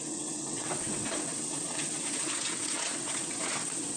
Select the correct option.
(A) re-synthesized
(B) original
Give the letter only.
A